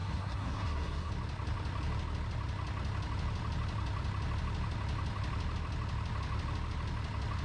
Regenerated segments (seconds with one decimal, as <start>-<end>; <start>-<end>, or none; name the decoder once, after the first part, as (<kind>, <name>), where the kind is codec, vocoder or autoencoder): 0.0-1.1 (codec, SNAC)